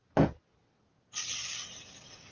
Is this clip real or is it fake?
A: real